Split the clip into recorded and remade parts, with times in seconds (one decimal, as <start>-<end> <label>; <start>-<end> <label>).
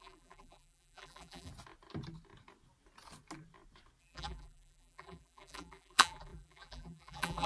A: 0.0-1.5 remade; 1.5-4.0 recorded; 4.0-7.5 remade